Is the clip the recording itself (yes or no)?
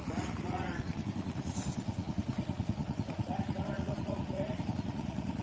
no